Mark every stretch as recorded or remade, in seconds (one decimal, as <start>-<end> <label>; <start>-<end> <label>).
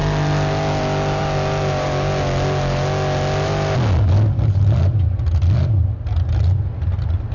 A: 0.0-7.3 recorded